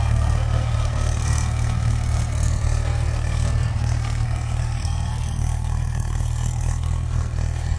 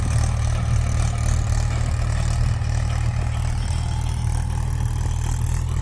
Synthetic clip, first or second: first